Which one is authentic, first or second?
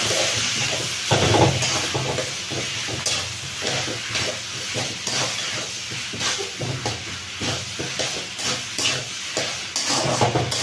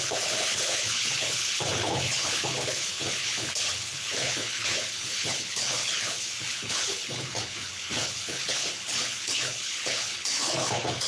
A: first